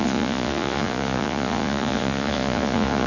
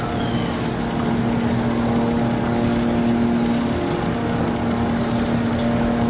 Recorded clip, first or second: second